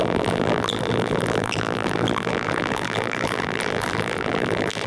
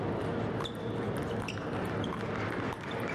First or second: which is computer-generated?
first